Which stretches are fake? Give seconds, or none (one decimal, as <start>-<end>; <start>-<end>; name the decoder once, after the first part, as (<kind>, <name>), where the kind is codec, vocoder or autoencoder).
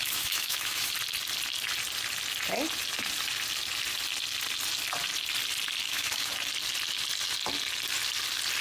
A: 0.0-0.9 (autoencoder, DAC-VAE); 5.8-6.3